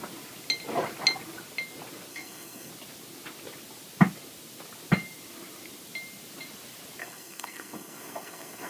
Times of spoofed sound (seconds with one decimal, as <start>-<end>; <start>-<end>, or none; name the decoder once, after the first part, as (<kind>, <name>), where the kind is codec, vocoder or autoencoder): 2.1-2.7 (codec, SNAC); 7.0-8.7